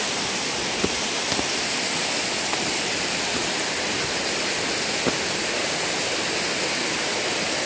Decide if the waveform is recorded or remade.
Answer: recorded